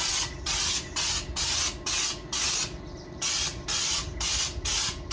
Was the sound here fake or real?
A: real